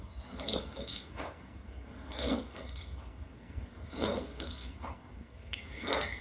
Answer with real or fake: fake